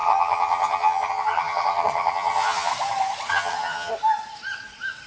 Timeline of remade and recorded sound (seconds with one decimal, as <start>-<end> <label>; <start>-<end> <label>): 0.0-2.7 remade; 2.7-3.3 recorded; 3.3-3.9 remade; 3.9-5.1 recorded